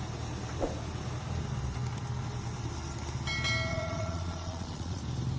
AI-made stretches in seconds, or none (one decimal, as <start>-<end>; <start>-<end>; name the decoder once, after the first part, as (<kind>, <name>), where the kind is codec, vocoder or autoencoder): 3.7-5.0 (vocoder, Vocos)